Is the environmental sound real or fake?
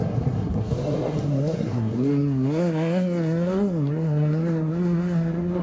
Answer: fake